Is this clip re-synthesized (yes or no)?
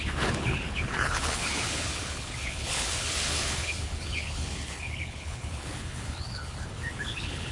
yes